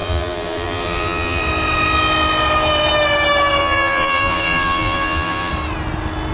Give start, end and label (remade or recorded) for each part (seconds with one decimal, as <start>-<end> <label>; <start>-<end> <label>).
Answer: 0.0-1.4 remade; 1.4-3.6 recorded; 3.6-5.5 remade; 5.5-6.3 recorded